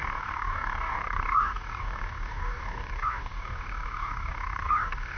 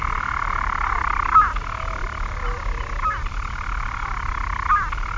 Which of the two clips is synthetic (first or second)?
first